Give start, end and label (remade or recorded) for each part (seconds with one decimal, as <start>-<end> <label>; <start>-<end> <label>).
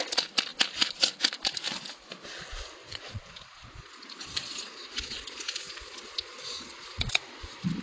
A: 0.0-2.8 recorded; 2.8-7.8 remade